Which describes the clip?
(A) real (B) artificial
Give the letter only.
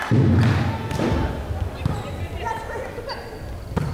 A